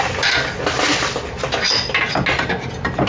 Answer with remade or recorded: recorded